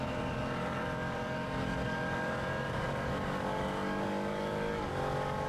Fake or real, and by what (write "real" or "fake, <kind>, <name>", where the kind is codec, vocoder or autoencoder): fake, codec, DAC